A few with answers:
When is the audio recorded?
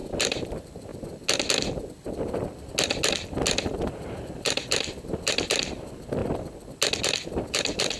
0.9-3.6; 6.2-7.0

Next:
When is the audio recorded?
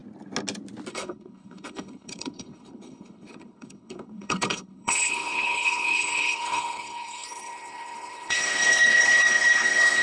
0.0-0.9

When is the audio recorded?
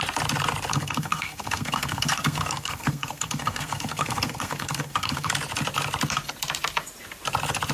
0.0-0.7; 5.3-7.7